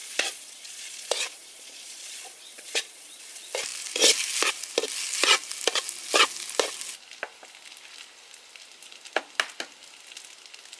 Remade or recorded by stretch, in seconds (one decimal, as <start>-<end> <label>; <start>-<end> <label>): 0.0-3.2 remade; 3.2-10.8 recorded